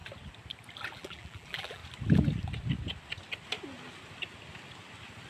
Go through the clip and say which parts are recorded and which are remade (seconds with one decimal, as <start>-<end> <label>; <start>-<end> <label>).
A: 0.0-0.9 recorded; 0.9-1.8 remade; 1.8-5.3 recorded